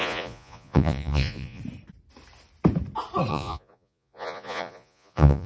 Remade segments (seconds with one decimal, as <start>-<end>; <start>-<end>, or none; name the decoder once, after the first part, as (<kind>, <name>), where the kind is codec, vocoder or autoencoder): 0.0-1.6 (vocoder, Vocos); 3.3-5.5